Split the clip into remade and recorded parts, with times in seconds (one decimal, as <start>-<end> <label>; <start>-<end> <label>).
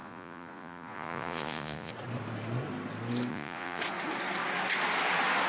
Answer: 0.0-1.9 remade; 1.9-3.3 recorded; 3.3-3.8 remade; 3.8-5.5 recorded